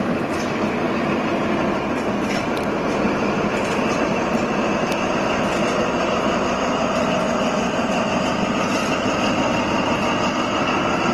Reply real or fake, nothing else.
real